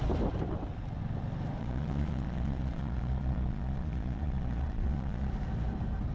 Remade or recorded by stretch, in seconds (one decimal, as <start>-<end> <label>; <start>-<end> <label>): 0.0-1.6 recorded; 1.6-5.3 remade; 5.3-6.1 recorded